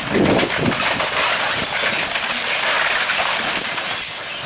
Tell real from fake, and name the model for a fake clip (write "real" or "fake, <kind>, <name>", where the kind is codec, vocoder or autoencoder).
real